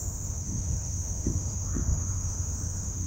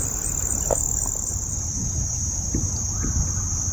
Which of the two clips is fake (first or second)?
first